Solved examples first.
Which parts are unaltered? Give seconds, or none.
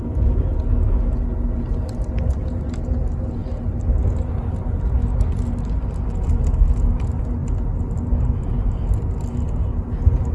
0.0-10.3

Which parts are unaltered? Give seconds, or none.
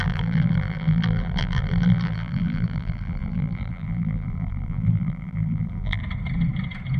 6.0-7.0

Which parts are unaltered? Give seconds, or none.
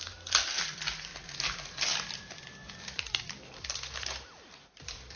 0.0-5.2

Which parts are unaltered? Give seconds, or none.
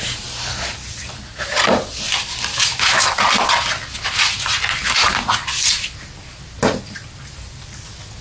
0.0-2.5; 3.1-8.2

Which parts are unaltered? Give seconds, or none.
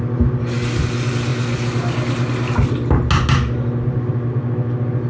0.0-5.1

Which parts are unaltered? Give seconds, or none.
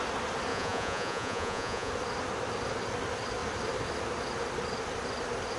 0.0-0.5; 1.9-5.6